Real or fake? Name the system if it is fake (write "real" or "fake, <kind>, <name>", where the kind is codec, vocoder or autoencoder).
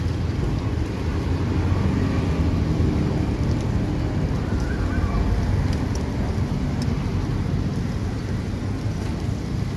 real